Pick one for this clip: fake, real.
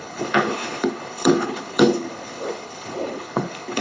fake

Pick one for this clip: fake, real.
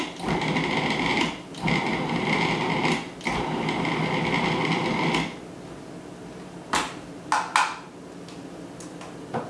real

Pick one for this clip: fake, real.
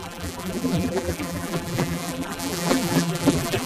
fake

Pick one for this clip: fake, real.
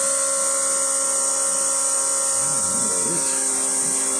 real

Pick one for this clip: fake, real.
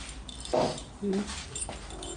real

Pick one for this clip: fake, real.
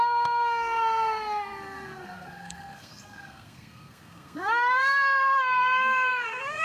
fake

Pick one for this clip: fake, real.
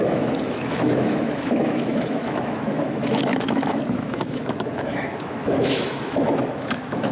fake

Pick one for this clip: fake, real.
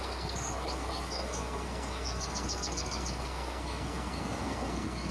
fake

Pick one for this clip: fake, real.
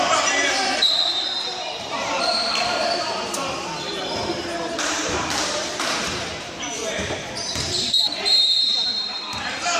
fake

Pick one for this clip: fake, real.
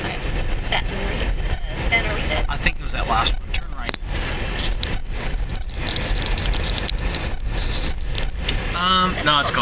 real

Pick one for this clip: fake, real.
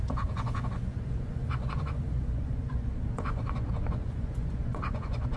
fake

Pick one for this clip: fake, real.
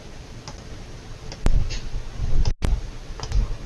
real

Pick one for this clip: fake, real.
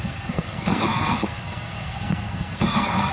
fake